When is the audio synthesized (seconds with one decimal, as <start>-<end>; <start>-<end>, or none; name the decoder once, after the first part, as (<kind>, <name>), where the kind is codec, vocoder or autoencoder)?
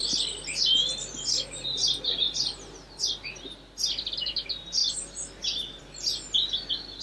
none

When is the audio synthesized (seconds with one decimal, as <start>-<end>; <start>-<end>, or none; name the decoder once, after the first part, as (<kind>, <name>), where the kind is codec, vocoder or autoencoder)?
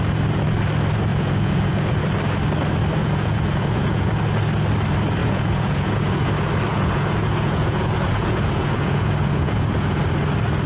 1.1-2.0 (vocoder, Vocos); 3.0-4.1; 5.2-6.3; 6.7-10.0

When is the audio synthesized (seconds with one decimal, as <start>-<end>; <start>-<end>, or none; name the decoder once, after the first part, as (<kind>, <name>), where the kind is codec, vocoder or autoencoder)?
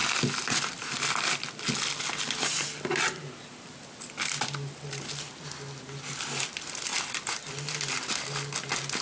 none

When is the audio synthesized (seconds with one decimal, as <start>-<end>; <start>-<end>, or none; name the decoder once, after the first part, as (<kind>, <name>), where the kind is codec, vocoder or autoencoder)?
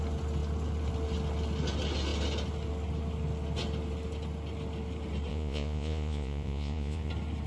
5.3-7.1 (vocoder, Vocos)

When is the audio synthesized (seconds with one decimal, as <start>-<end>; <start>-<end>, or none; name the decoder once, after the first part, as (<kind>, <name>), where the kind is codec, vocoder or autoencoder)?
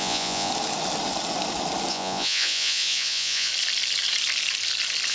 0.0-0.5 (vocoder, Vocos); 1.9-3.5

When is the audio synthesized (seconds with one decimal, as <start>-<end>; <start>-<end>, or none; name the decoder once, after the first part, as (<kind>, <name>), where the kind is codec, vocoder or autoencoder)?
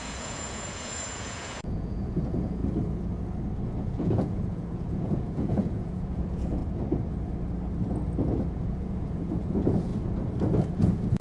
0.0-2.6 (vocoder, Vocos); 3.8-6.6; 8.5-9.9; 10.6-11.2